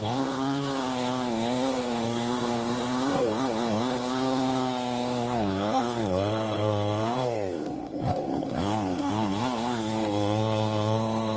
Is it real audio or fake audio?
fake